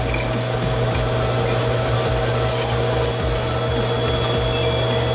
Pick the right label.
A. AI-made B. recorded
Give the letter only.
B